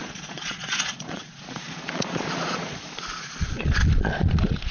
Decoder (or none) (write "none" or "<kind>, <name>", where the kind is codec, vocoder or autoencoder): vocoder, Vocos